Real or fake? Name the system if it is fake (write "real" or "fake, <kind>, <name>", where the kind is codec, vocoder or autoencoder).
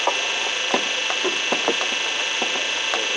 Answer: fake, vocoder, BigVGAN v2